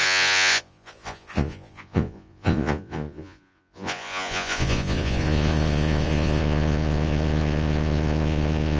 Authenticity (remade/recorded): remade